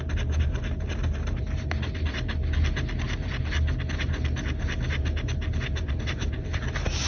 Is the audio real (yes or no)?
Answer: yes